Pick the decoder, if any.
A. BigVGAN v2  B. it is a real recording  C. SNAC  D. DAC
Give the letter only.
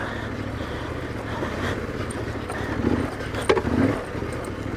B